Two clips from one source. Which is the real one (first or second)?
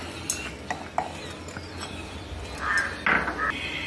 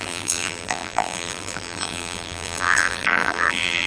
first